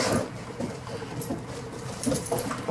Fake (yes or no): yes